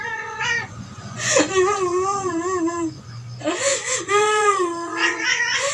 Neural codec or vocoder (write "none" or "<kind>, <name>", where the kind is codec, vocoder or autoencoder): vocoder, Vocos